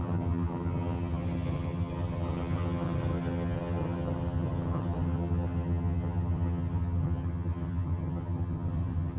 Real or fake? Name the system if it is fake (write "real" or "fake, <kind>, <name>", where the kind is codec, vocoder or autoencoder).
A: fake, vocoder, HiFi-GAN